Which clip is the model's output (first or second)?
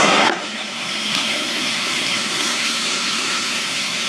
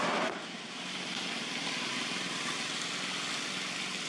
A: first